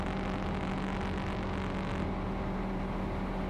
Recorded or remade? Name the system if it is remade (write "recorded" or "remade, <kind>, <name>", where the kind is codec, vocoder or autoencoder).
recorded